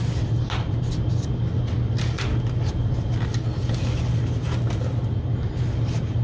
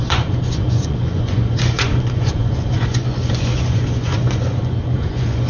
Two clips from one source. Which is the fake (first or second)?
second